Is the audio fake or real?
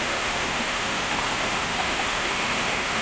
fake